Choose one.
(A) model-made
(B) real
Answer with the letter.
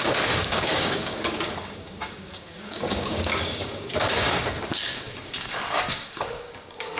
A